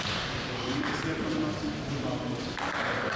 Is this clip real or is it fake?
real